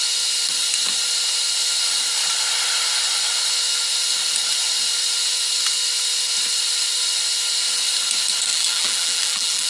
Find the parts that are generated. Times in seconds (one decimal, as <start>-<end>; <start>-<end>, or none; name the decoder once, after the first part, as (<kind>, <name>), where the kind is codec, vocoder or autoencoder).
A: 8.5-9.7 (vocoder, BigVGAN v2)